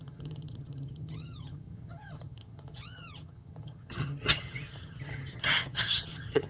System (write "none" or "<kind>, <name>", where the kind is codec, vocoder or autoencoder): vocoder, HiFi-GAN